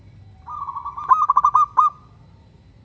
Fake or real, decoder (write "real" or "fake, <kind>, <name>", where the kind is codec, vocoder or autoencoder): real